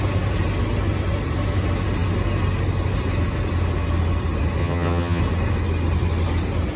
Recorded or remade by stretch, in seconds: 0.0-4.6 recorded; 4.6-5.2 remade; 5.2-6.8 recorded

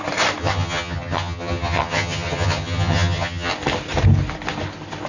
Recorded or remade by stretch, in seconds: 0.0-0.4 recorded; 0.4-3.5 remade; 3.5-5.1 recorded

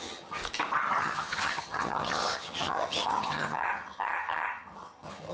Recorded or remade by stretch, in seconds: 0.0-0.4 remade; 0.4-1.0 recorded; 1.0-5.3 remade

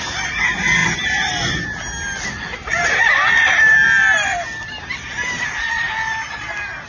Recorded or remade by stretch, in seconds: 0.0-6.9 recorded

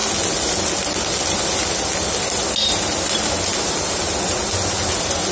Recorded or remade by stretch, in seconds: 0.0-5.3 recorded

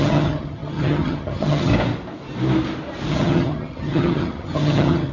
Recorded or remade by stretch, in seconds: 0.0-1.7 remade; 1.7-3.1 recorded; 3.1-5.1 remade